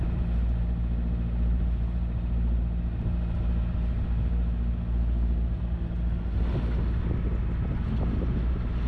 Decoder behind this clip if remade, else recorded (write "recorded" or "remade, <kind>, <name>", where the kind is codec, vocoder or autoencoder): recorded